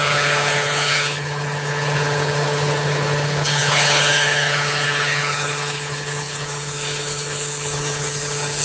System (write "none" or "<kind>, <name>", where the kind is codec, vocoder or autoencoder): codec, HILCodec